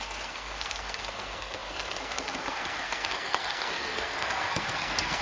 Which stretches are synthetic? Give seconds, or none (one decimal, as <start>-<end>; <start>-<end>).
0.0-5.2